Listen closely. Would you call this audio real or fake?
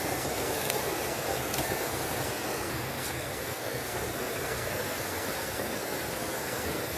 fake